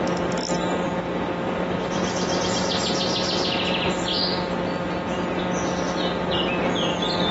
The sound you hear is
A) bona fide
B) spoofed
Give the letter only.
A